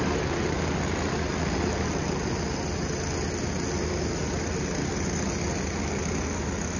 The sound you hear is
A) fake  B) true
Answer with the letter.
B